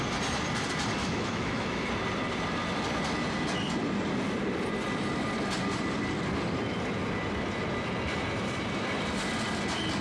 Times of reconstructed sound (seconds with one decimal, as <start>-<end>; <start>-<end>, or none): 1.0-1.9

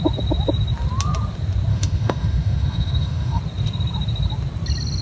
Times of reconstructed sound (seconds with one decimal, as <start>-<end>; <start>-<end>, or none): 1.7-3.4

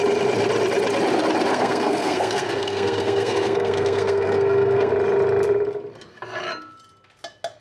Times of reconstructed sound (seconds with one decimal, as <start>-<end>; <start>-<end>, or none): 1.5-4.9

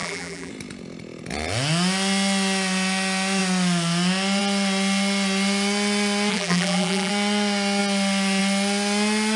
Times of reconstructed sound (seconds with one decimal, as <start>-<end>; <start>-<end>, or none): 0.0-0.5; 6.3-7.1

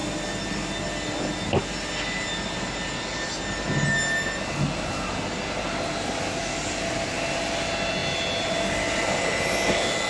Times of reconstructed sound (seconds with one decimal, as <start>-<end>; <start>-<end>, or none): none

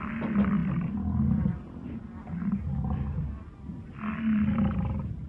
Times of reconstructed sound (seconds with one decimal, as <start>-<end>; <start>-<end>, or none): none

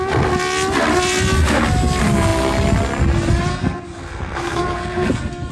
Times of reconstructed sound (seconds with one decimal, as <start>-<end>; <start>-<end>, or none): 3.5-5.5